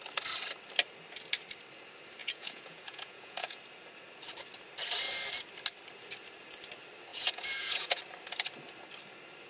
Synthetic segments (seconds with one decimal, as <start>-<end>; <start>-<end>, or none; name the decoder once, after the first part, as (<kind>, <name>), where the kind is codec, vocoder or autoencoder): 2.2-3.6 (vocoder, Vocos); 7.1-8.0